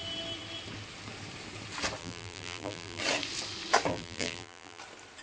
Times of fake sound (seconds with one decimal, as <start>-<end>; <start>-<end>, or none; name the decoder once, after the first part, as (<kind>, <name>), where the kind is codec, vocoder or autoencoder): 2.0-3.0 (vocoder, BigVGAN v2); 3.9-4.8